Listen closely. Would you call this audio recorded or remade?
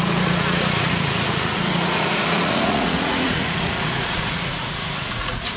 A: remade